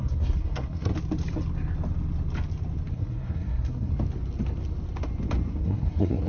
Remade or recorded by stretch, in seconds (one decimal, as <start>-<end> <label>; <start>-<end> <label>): 0.0-0.9 remade; 0.9-2.9 recorded; 2.9-3.9 remade; 3.9-5.5 recorded; 5.5-6.3 remade